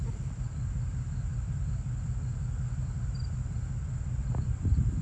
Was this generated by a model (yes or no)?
yes